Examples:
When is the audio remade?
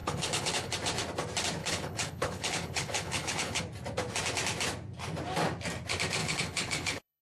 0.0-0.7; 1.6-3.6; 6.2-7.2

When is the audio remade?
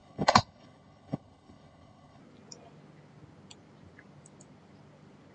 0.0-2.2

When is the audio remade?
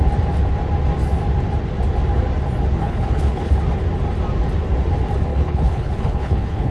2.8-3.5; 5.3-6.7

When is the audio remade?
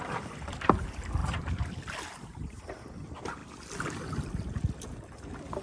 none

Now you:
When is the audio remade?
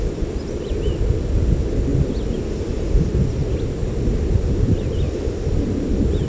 none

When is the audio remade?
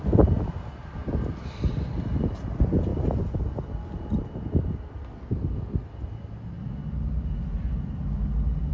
none